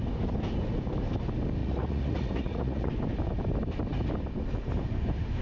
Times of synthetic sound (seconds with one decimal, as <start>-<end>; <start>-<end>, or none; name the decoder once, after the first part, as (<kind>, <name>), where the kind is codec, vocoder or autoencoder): 1.6-2.9 (vocoder, Vocos)